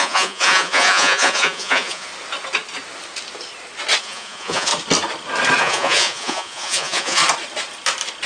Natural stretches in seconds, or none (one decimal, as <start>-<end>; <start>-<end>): 2.1-4.0; 4.7-5.6; 7.2-8.3